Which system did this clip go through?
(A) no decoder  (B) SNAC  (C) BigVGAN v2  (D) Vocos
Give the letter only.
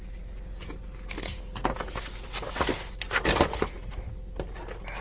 A